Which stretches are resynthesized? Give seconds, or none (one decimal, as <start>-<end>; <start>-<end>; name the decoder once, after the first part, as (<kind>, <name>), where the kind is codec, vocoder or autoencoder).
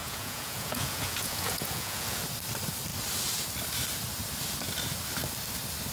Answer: 0.0-2.2 (vocoder, Vocos)